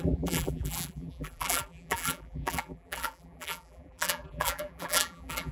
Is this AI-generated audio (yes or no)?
yes